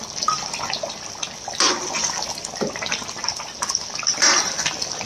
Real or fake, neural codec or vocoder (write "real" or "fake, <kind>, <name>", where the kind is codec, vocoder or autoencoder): real